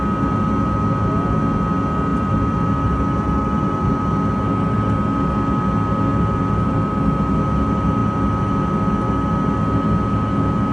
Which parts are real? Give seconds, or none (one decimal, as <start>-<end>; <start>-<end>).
0.0-2.1; 3.9-6.1; 7.1-10.7